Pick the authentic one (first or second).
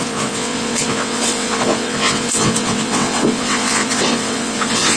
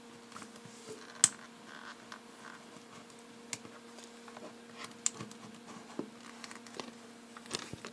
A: second